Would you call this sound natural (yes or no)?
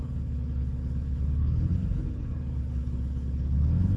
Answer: no